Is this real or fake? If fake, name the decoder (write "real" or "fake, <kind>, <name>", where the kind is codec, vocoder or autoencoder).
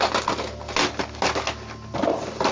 real